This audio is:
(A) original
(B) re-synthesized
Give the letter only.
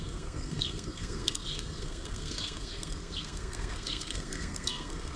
B